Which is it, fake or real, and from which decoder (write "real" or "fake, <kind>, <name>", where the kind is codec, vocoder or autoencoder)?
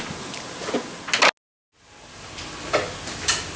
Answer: real